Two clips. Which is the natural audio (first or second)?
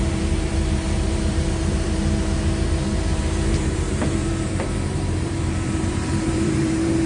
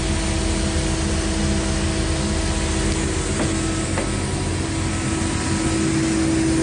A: second